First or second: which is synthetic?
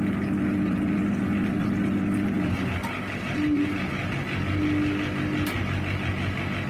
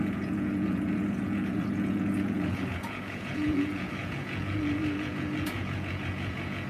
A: second